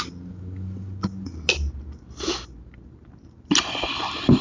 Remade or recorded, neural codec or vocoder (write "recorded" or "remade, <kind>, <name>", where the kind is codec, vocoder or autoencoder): recorded